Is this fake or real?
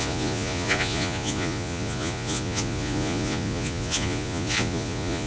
fake